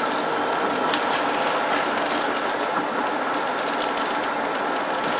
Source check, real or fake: real